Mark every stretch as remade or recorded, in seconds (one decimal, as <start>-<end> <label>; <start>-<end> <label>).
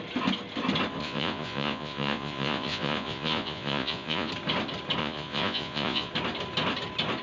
0.0-1.0 recorded; 1.0-4.3 remade; 4.3-5.0 recorded; 5.0-6.1 remade; 6.1-7.2 recorded